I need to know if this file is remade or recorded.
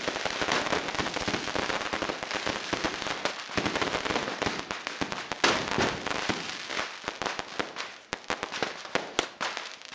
recorded